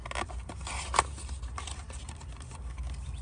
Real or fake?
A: real